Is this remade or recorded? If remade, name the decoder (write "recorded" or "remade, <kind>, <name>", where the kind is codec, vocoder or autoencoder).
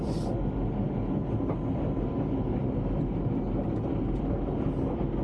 recorded